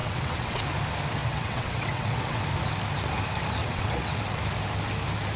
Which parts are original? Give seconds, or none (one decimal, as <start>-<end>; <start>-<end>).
0.6-1.2; 2.4-3.6; 4.2-5.4